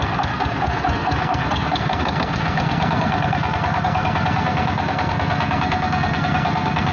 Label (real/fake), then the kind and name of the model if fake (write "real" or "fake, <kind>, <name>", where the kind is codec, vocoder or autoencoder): fake, codec, SNAC